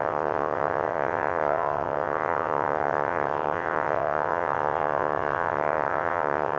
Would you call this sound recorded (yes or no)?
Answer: no